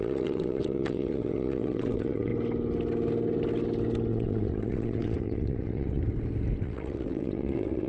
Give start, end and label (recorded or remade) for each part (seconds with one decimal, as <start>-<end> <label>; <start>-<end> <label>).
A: 0.0-2.3 remade; 2.3-4.1 recorded; 4.1-6.0 remade; 6.0-6.6 recorded; 6.6-7.9 remade